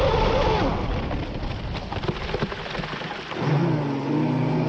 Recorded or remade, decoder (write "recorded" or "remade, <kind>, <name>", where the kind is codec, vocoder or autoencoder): recorded